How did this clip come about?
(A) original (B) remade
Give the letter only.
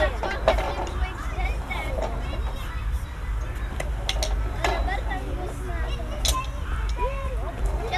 A